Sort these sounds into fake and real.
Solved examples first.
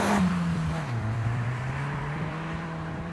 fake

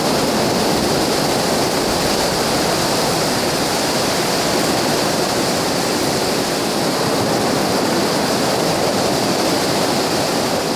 fake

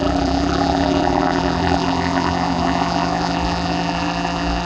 fake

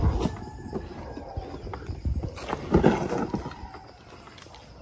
real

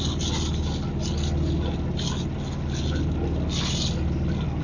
real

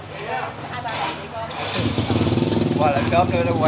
real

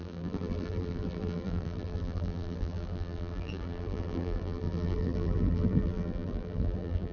fake